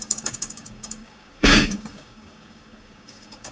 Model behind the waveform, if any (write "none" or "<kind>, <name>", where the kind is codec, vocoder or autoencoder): codec, DAC